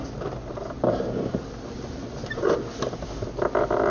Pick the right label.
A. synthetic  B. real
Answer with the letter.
B